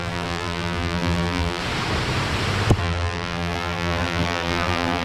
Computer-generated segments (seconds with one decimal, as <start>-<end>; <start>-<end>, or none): 0.0-1.6; 2.8-5.0